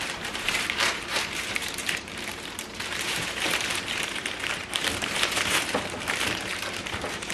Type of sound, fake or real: fake